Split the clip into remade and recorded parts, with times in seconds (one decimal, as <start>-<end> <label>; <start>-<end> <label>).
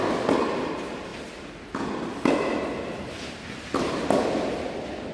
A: 0.0-5.1 recorded